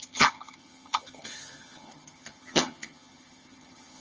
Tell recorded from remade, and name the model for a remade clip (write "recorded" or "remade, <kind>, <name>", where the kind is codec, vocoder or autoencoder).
remade, vocoder, HiFi-GAN